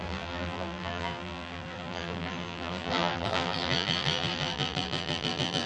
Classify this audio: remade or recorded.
remade